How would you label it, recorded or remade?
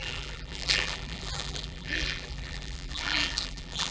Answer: remade